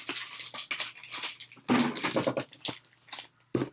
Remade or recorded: recorded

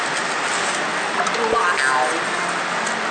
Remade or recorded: recorded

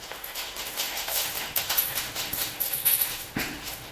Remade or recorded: remade